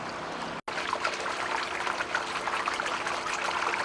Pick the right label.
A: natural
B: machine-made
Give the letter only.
A